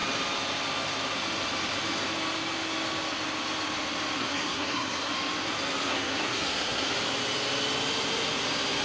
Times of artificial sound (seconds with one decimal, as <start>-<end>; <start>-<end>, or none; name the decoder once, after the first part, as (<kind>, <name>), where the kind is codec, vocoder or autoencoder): 4.2-5.1 (codec, SNAC); 5.9-6.9